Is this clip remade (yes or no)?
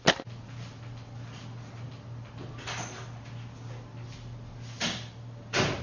no